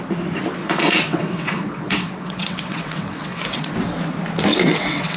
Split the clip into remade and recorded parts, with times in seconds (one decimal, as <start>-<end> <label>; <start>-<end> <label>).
0.0-0.6 recorded; 0.6-3.7 remade; 3.7-4.5 recorded; 4.5-5.2 remade